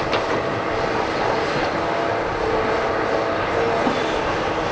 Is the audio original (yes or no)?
yes